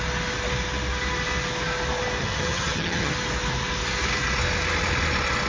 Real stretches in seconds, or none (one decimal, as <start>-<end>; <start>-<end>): 0.0-2.2; 3.1-5.5